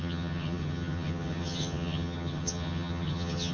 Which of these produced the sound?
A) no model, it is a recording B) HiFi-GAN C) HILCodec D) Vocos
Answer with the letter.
B